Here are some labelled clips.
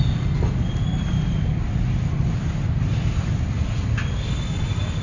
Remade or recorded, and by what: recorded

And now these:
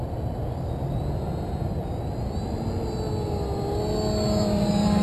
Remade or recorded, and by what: recorded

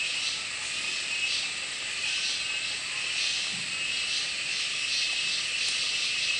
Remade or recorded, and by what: recorded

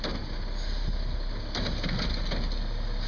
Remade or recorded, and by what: recorded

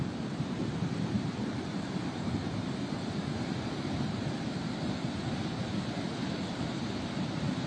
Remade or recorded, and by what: remade, vocoder, BigVGAN v2